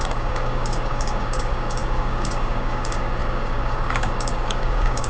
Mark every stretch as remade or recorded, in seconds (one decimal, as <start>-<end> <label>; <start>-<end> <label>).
0.0-5.1 remade